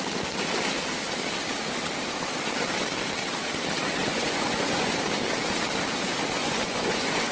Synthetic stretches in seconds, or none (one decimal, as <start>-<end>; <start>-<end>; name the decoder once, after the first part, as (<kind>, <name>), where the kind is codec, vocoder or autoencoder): 4.0-4.9 (vocoder, Vocos); 6.4-7.3